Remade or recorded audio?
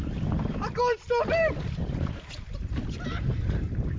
recorded